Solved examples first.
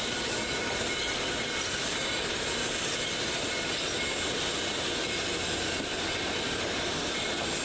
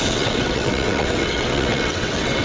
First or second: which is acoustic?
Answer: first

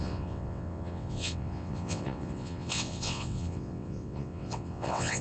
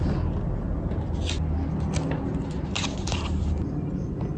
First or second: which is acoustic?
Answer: second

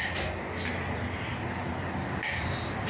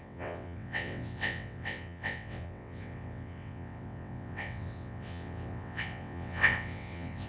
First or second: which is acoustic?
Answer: first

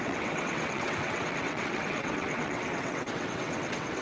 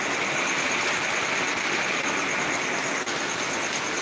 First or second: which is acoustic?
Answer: second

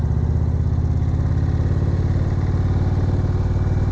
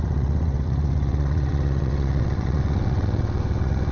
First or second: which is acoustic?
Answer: first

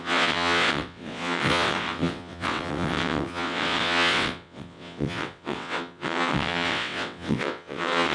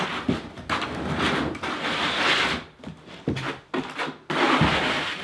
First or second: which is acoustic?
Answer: second